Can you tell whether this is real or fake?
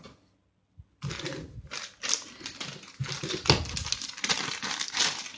real